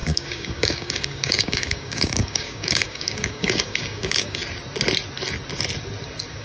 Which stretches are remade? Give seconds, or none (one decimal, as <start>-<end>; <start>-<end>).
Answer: 0.0-4.4